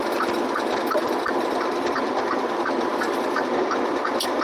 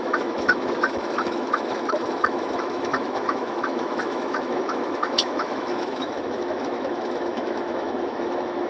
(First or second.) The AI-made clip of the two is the second